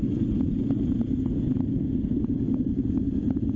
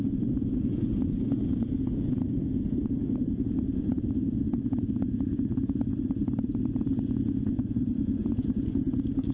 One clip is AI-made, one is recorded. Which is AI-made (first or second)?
second